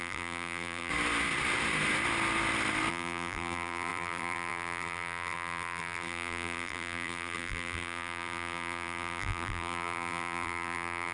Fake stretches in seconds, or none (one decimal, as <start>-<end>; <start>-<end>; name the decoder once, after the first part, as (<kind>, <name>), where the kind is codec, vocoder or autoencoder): 0.0-0.9 (vocoder, BigVGAN v2); 2.9-11.1